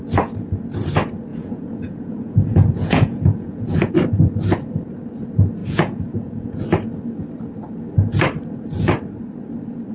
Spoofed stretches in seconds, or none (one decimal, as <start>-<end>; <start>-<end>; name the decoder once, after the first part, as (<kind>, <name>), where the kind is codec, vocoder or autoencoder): 1.3-3.9 (vocoder, Vocos); 5.6-6.5